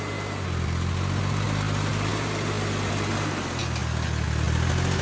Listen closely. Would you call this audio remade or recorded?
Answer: recorded